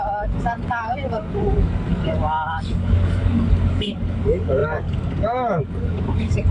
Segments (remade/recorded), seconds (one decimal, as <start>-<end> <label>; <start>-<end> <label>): 0.0-6.5 remade